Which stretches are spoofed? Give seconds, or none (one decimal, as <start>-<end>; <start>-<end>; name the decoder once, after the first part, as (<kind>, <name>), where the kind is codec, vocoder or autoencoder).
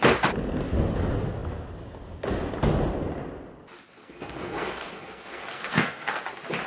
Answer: 4.0-6.2 (codec, SNAC)